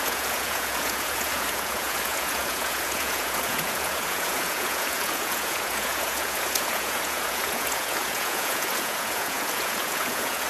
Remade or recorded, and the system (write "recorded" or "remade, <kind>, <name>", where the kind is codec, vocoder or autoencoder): remade, vocoder, Vocos